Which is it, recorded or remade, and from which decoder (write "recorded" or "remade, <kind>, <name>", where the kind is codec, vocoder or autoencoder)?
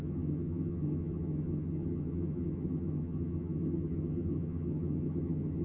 remade, vocoder, HiFi-GAN